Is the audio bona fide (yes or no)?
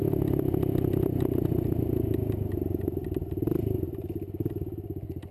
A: yes